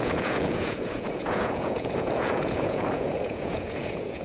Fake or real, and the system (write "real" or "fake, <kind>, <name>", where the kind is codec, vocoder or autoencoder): fake, vocoder, Vocos